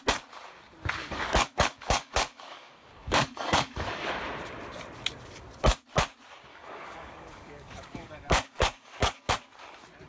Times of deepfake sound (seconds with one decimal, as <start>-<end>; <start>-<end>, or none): 1.0-4.1; 6.5-9.3